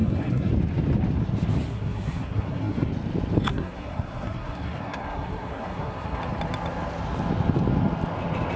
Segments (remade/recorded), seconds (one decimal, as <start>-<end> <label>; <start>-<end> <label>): 0.0-0.5 remade; 0.5-1.7 recorded; 1.7-2.9 remade; 2.9-3.5 recorded; 3.5-6.2 remade; 6.2-8.6 recorded